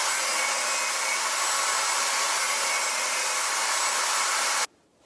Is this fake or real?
real